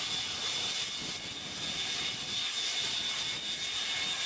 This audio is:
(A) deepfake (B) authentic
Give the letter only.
B